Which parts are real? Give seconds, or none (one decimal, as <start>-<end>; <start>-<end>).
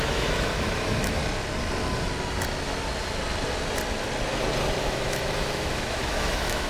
1.2-4.8